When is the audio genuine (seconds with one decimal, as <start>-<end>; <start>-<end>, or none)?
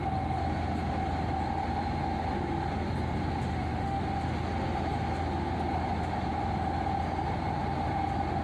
0.0-3.5; 4.0-8.4